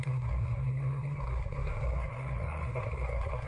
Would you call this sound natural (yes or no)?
no